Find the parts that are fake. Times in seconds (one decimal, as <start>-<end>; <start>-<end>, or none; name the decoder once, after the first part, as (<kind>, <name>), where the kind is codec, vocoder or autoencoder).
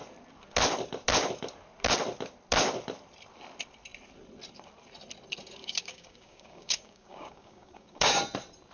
5.6-8.2 (codec, DAC)